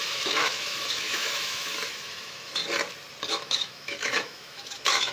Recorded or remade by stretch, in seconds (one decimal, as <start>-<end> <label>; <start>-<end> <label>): 0.0-2.6 remade; 2.6-3.3 recorded; 3.3-5.1 remade